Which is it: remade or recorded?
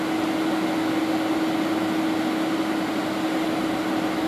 recorded